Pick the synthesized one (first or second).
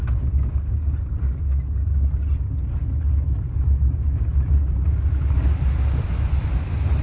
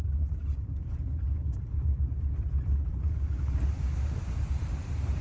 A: second